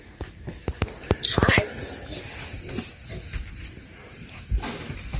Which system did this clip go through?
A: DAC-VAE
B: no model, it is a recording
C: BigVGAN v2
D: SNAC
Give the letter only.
B